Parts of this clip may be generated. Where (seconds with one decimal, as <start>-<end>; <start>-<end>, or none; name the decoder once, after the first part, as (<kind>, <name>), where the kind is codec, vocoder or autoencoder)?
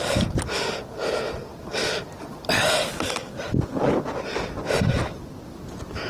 none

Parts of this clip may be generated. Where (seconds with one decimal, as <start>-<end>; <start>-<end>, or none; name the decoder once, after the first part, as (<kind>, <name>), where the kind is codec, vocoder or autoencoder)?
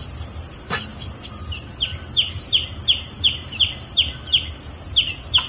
0.0-0.5 (vocoder, BigVGAN v2); 0.9-4.2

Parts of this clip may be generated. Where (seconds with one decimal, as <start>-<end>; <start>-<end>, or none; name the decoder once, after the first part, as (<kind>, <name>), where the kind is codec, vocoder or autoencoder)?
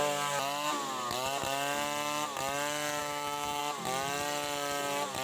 3.0-3.6 (autoencoder, DAC-VAE)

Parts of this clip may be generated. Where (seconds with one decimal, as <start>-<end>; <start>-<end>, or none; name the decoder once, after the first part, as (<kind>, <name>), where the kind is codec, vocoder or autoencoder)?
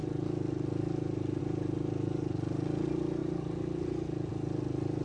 none